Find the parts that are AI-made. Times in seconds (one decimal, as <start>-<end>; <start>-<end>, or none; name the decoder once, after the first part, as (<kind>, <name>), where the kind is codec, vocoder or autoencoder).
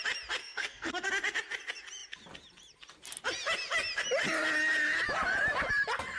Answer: 0.4-1.1 (codec, SNAC)